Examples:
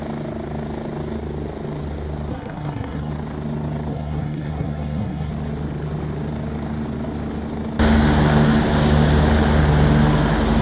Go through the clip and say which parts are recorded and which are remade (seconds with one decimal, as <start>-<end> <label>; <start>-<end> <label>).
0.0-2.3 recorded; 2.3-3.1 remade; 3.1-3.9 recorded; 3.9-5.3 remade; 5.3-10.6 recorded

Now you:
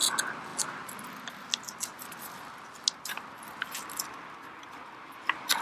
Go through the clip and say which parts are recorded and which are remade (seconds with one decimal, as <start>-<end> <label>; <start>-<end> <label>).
0.0-5.6 recorded

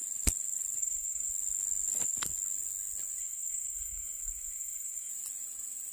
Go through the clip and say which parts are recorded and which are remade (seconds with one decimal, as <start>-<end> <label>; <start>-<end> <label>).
0.0-0.8 recorded; 0.8-1.3 remade; 1.3-3.2 recorded; 3.2-5.1 remade; 5.1-5.9 recorded

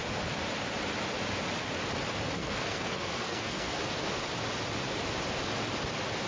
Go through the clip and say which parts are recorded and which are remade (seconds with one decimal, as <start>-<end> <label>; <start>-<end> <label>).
0.0-2.4 recorded; 2.4-3.8 remade; 3.8-6.3 recorded

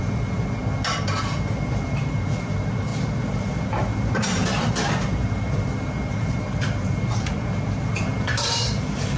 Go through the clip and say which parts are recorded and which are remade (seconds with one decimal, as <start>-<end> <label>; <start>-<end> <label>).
0.0-0.6 remade; 0.6-1.2 recorded; 1.2-9.2 remade

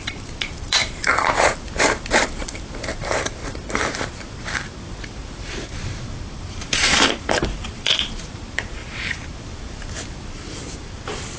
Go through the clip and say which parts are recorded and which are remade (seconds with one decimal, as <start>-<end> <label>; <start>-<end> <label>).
0.0-11.4 remade